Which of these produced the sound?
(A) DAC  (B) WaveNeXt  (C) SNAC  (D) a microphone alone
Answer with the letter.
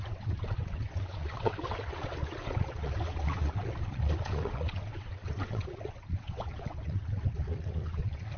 B